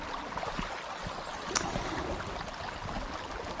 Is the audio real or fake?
real